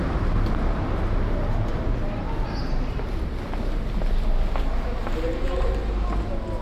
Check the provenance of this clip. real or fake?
real